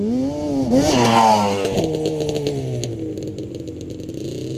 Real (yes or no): yes